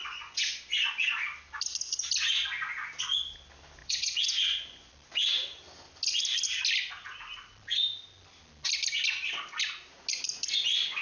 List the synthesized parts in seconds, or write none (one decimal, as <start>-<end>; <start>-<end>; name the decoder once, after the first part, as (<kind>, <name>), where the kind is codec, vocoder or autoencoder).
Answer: 0.0-1.0 (vocoder, Vocos); 3.8-4.9